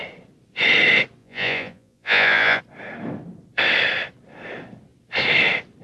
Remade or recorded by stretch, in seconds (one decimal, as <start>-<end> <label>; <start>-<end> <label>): 0.0-1.2 recorded; 1.2-2.6 remade; 2.6-5.8 recorded

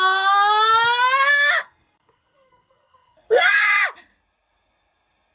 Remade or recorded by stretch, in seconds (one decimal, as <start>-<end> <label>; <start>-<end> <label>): 0.0-1.6 recorded; 1.6-3.6 remade; 3.6-5.3 recorded

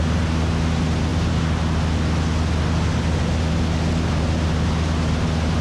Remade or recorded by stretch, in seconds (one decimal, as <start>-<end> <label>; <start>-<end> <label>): 0.0-5.6 recorded

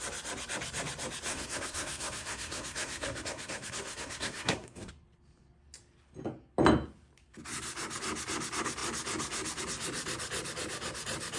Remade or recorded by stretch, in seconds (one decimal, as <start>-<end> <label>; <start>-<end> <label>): 0.0-1.3 recorded; 1.3-4.9 remade; 4.9-11.4 recorded

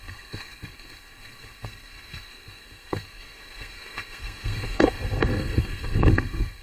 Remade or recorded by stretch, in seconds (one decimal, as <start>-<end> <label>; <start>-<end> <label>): 0.0-6.6 remade

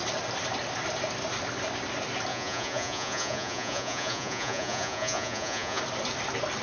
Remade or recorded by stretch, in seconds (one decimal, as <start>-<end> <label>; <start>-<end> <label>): 0.0-2.3 recorded; 2.3-5.8 remade; 5.8-6.6 recorded

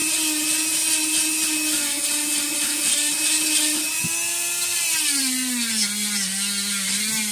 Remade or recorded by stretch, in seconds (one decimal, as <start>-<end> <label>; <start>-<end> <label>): 0.0-7.3 recorded